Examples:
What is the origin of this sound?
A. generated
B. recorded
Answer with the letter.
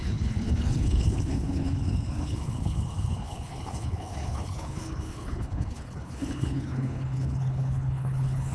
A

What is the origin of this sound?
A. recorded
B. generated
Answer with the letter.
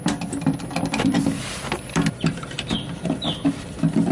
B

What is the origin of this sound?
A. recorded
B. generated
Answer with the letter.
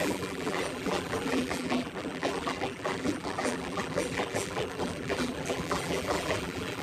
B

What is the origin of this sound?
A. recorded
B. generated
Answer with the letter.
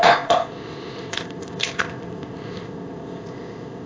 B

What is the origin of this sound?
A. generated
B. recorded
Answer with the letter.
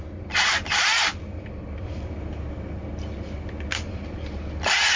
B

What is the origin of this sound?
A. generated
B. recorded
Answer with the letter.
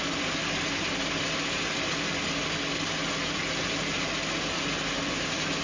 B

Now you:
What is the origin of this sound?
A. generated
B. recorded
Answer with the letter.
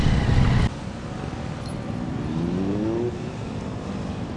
B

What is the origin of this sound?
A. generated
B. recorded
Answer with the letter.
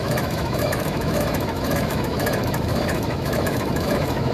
A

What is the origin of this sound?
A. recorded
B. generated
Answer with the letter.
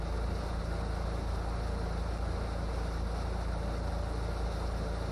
A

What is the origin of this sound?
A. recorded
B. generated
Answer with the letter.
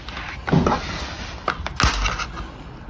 A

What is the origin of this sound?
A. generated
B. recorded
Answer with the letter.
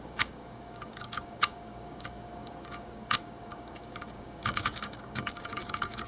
A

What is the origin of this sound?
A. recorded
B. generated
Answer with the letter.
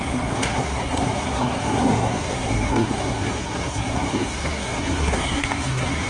B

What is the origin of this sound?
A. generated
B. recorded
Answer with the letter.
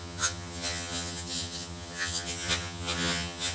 A